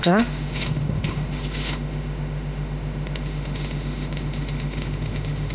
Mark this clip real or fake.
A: fake